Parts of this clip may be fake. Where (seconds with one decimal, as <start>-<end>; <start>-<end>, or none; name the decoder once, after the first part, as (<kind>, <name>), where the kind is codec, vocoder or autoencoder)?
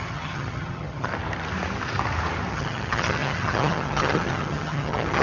0.0-1.1 (vocoder, HiFi-GAN); 2.5-5.2